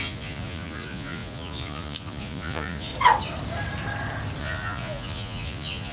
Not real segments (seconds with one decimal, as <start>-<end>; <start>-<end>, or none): 0.0-2.9; 4.4-5.9